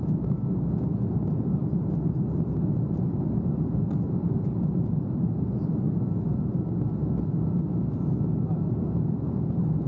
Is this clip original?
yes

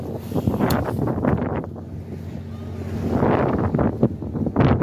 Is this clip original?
yes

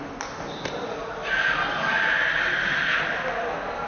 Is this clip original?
yes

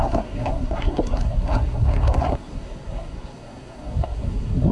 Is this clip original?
no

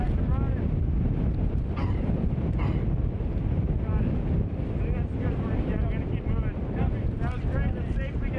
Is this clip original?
yes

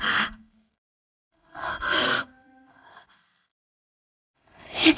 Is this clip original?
no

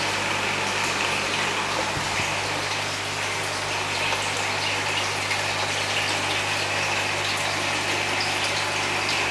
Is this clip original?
yes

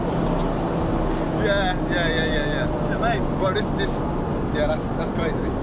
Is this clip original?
yes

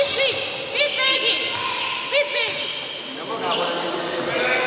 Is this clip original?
yes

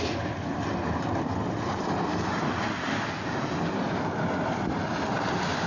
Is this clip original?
yes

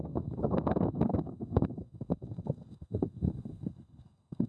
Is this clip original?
no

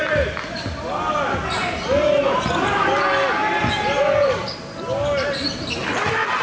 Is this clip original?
yes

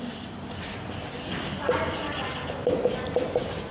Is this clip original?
yes